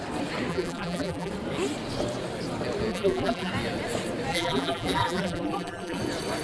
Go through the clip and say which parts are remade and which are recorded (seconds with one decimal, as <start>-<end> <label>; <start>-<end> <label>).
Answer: 0.0-0.5 recorded; 0.5-1.3 remade; 1.3-2.9 recorded; 2.9-3.5 remade; 3.5-4.3 recorded; 4.3-6.0 remade; 6.0-6.4 recorded